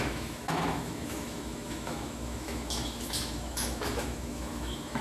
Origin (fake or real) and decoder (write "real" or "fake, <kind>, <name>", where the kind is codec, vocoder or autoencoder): fake, autoencoder, DAC-VAE